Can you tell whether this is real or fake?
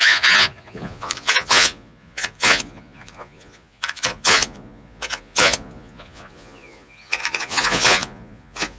fake